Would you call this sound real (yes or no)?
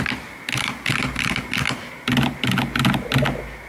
yes